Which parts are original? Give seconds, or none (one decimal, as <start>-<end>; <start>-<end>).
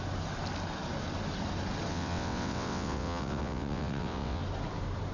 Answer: 0.0-1.9; 4.4-5.1